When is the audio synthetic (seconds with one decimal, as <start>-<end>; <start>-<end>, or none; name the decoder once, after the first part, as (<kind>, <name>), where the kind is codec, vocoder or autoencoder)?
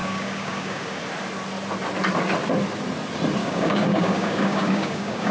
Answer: 0.0-1.0 (codec, DAC); 3.4-5.3